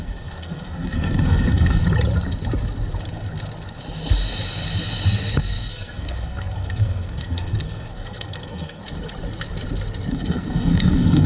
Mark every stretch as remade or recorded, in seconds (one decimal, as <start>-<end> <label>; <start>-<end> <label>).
0.0-1.8 remade; 1.8-5.3 recorded; 5.3-8.8 remade; 8.8-10.1 recorded; 10.1-11.3 remade

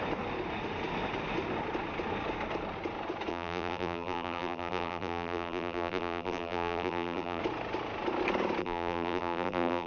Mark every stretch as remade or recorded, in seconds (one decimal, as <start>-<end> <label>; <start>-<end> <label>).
0.0-3.3 recorded; 3.3-7.4 remade; 7.4-8.6 recorded; 8.6-9.9 remade

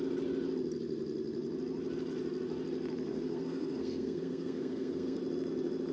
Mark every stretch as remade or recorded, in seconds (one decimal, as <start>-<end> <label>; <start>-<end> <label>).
0.0-3.1 recorded; 3.1-5.2 remade; 5.2-5.9 recorded